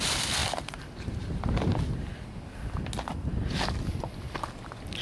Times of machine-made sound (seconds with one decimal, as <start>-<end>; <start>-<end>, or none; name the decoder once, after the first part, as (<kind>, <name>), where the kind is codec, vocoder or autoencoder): 0.4-1.8 (vocoder, BigVGAN v2)